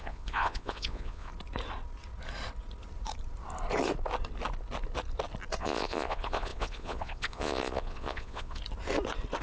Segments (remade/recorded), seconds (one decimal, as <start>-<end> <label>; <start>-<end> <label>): 0.0-1.3 remade; 1.3-5.6 recorded; 5.6-8.6 remade; 8.6-9.4 recorded